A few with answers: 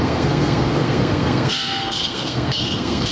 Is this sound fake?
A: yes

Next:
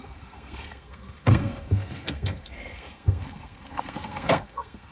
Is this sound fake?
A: yes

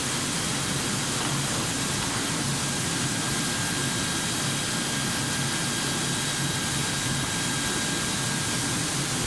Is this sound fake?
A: no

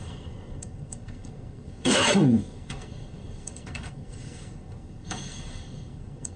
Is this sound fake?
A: yes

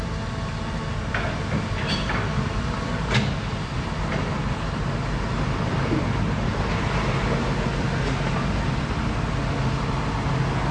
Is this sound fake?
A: no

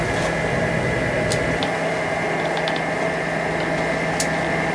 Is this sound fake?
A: no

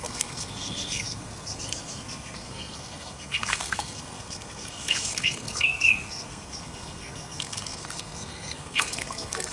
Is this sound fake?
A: yes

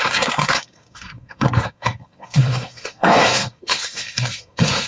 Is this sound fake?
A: yes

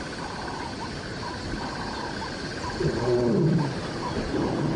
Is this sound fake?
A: no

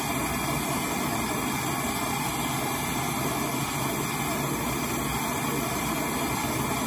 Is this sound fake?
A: no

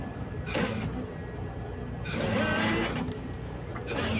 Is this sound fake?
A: no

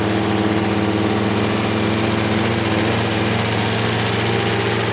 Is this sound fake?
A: no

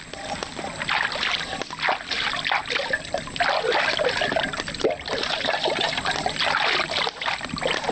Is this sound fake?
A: no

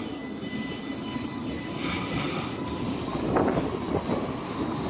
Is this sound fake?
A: no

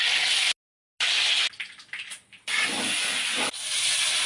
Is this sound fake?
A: no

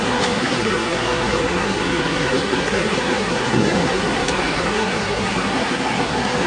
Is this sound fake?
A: yes